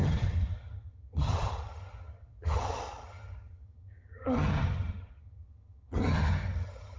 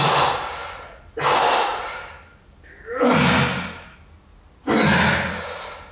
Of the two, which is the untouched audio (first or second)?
second